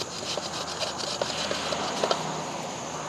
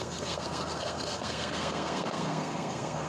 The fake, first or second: second